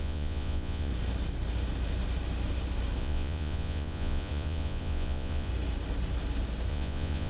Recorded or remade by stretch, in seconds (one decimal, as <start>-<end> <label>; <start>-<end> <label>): 0.0-0.9 remade; 0.9-3.0 recorded; 3.0-5.5 remade; 5.5-6.7 recorded; 6.7-7.3 remade